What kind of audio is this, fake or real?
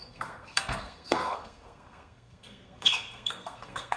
fake